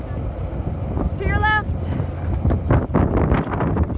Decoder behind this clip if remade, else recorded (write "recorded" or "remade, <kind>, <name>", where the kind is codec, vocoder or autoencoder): recorded